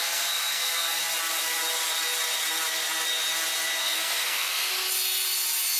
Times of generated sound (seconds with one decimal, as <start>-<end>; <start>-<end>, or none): 0.0-1.0; 3.8-4.7